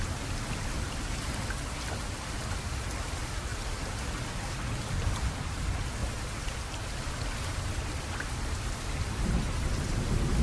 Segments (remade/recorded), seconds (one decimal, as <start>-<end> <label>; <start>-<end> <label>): 0.0-10.4 recorded